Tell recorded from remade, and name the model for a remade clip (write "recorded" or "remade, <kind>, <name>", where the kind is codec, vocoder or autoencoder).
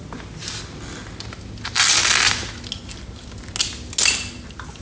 recorded